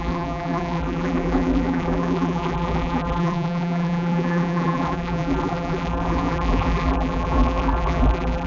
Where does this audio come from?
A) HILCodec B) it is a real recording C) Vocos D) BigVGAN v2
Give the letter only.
D